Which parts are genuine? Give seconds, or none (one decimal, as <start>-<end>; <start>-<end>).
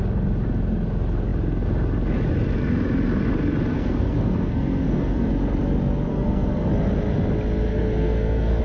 0.0-3.7; 5.3-6.1; 6.7-7.7